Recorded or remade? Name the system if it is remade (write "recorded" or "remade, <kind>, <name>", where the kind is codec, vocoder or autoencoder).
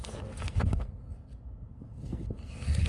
remade, codec, SNAC